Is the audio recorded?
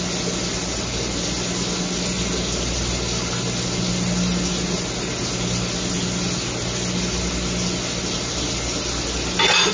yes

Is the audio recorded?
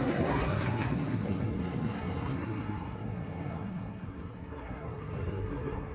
no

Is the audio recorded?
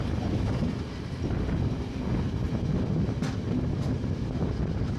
yes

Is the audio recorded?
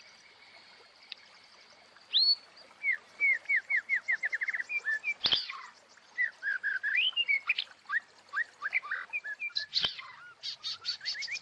yes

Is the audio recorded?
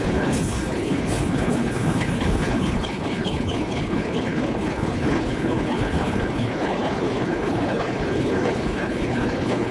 no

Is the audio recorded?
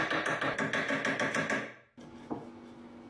yes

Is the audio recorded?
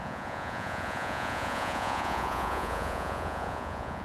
no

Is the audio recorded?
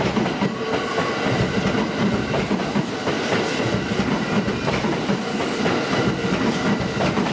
yes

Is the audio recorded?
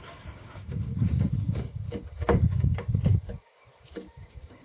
no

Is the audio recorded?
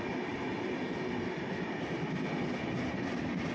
yes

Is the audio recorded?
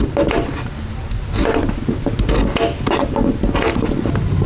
yes